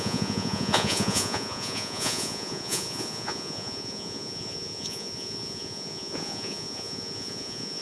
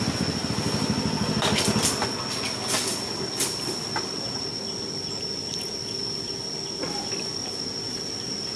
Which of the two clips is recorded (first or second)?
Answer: second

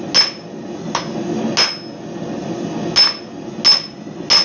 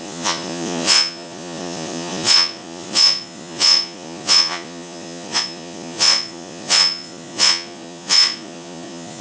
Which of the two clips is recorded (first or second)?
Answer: first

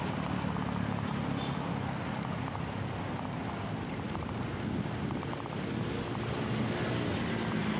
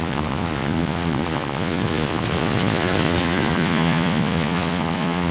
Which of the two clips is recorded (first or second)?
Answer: first